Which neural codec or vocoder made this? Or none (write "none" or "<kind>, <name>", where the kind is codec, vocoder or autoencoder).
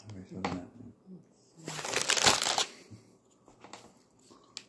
none